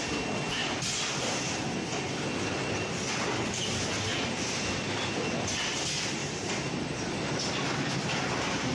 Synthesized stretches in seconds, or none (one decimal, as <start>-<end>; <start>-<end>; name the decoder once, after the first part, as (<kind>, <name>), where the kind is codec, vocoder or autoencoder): 6.2-7.4 (vocoder, BigVGAN v2)